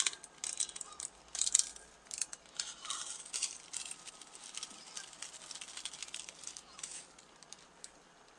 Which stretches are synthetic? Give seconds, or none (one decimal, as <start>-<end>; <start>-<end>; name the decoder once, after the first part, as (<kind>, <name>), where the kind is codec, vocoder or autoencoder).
none